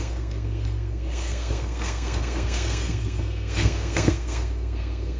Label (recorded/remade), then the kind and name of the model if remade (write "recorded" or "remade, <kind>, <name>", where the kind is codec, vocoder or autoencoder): remade, codec, SNAC